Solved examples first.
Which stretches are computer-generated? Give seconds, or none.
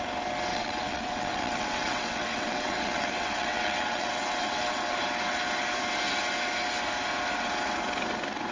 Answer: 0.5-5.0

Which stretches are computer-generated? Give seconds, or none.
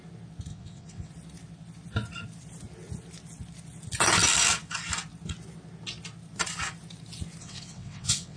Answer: 0.5-1.1; 7.4-8.4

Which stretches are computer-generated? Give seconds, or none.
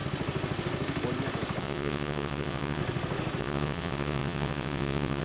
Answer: 1.6-2.8; 3.4-5.2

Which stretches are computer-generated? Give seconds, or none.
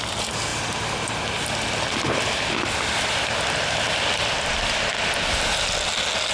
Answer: none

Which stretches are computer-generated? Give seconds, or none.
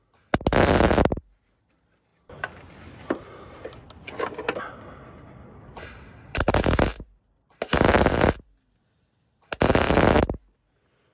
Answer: none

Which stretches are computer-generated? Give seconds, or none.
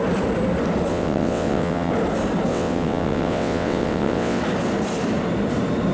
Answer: 0.9-1.9; 2.5-4.4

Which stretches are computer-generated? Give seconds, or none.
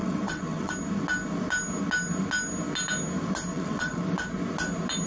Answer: 0.0-0.7; 3.5-4.0